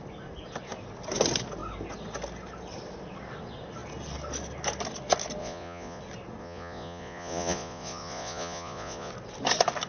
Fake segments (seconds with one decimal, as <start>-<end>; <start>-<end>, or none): 5.4-6.0; 6.4-9.1